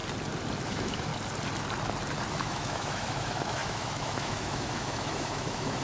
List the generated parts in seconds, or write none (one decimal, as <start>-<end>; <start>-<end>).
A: 0.7-1.1; 2.3-5.8